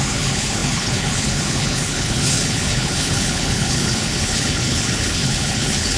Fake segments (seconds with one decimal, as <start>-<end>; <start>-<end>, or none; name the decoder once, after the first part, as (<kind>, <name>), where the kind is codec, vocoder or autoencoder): 0.0-6.0 (codec, HILCodec)